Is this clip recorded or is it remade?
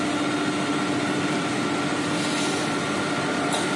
recorded